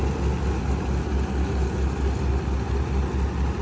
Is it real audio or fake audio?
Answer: real